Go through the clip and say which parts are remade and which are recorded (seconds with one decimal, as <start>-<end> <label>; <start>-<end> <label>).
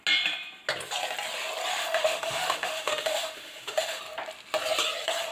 0.0-1.7 recorded; 1.7-4.0 remade; 4.0-5.3 recorded